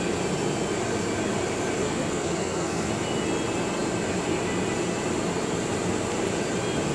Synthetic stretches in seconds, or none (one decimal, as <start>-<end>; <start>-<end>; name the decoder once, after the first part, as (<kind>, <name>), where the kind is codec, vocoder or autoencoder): 1.8-2.9 (codec, SNAC)